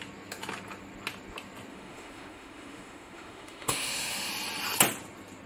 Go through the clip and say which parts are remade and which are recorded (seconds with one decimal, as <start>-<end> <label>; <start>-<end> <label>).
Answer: 0.0-1.7 recorded; 1.7-4.3 remade; 4.3-5.5 recorded